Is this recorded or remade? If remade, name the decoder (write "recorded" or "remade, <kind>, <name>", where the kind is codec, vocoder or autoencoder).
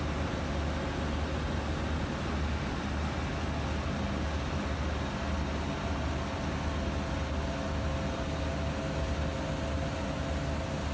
recorded